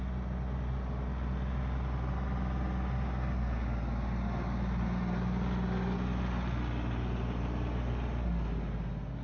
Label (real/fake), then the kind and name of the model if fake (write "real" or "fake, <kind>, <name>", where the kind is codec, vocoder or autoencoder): real